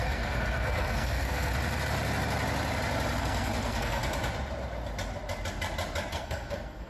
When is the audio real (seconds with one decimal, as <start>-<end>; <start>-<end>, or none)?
1.5-3.2; 4.0-6.1